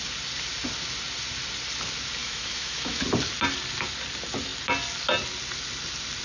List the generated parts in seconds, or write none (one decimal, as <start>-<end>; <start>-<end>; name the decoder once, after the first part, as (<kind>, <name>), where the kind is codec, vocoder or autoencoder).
2.2-3.0 (autoencoder, DAC-VAE)